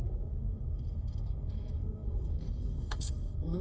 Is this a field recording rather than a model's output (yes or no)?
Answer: no